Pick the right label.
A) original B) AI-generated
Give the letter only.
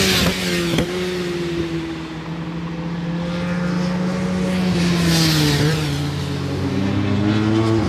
A